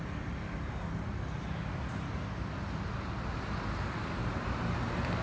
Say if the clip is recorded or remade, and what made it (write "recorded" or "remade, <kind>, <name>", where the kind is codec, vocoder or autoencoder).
recorded